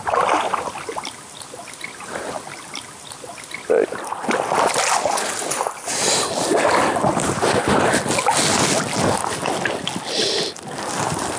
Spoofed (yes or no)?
no